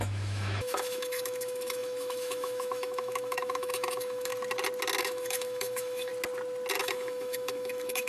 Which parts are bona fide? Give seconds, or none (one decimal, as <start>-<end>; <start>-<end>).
4.3-5.0; 6.1-6.8